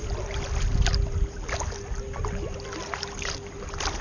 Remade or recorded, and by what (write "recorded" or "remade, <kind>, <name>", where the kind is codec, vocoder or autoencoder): recorded